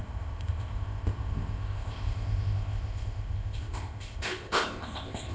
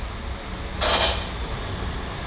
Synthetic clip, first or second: first